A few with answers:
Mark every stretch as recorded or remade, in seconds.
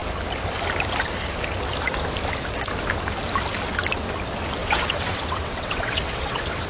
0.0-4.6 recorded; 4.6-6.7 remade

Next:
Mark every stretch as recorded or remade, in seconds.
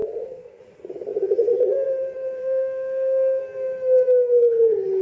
0.0-0.6 remade; 0.6-2.4 recorded; 2.4-3.4 remade; 3.4-5.0 recorded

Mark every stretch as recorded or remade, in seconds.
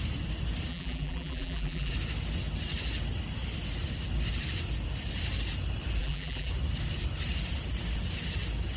0.0-0.7 recorded; 0.7-1.9 remade; 1.9-6.0 recorded; 6.0-6.5 remade; 6.5-8.8 recorded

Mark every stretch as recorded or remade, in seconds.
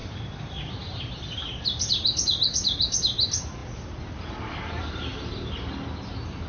0.0-1.0 remade; 1.0-6.5 recorded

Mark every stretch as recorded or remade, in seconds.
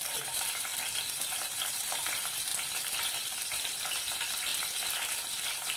0.0-0.7 remade; 0.7-1.2 recorded; 1.2-5.8 remade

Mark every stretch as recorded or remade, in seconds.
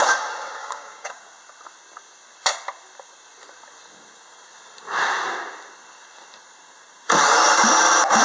0.0-0.6 recorded; 0.6-1.2 remade; 1.2-8.2 recorded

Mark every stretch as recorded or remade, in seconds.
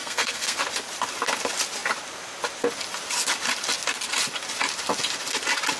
0.0-0.6 remade; 0.6-5.8 recorded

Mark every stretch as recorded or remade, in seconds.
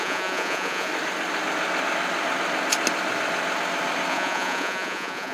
0.0-0.9 remade; 0.9-4.1 recorded; 4.1-5.3 remade